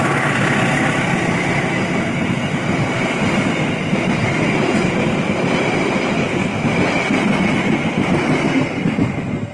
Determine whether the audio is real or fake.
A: real